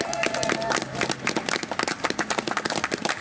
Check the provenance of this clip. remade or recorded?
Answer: recorded